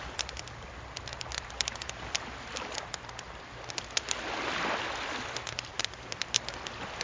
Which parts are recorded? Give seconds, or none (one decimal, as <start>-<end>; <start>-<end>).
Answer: 0.0-7.0